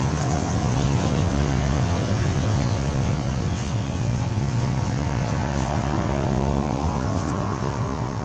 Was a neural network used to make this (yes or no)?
yes